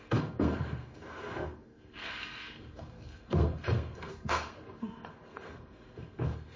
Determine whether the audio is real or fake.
fake